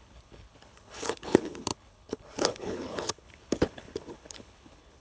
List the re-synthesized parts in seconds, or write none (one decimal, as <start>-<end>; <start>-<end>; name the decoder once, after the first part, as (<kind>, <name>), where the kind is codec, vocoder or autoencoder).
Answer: 0.0-5.0 (codec, HILCodec)